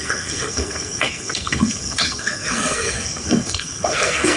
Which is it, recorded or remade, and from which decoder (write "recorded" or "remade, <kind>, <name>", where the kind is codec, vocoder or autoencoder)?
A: remade, codec, SNAC